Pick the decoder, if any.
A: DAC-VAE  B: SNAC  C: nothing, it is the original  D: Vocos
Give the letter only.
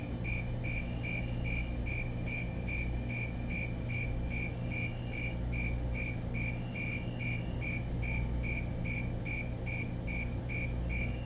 C